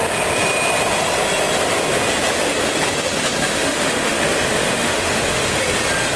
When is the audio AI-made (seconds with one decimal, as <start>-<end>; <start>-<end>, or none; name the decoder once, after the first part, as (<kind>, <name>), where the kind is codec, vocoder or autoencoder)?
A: 3.5-5.6 (autoencoder, DAC-VAE)